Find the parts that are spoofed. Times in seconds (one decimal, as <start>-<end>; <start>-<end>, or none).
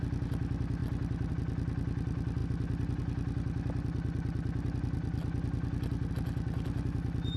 none